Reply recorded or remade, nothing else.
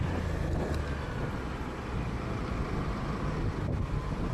recorded